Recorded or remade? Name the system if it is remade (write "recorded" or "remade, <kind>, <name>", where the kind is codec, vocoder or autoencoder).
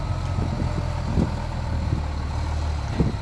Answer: recorded